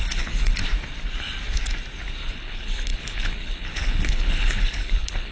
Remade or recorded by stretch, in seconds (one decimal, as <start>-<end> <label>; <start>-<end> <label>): 0.0-0.6 remade; 0.6-2.2 recorded; 2.2-5.3 remade